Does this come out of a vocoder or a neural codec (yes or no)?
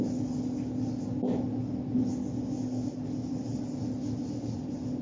no